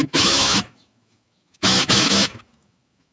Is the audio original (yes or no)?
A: no